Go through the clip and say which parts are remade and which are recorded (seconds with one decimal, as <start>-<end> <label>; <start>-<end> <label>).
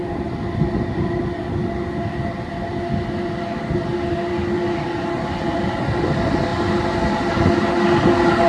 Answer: 0.0-8.5 recorded